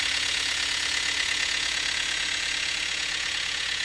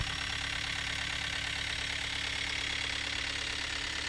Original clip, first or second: second